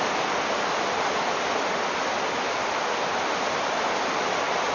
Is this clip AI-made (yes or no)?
no